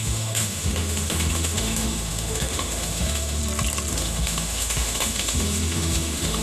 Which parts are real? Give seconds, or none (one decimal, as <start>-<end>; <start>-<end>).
3.4-3.9